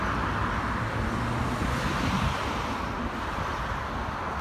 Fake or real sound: real